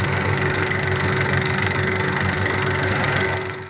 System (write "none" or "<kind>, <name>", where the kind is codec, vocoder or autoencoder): codec, SNAC